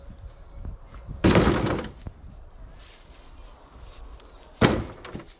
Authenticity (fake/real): real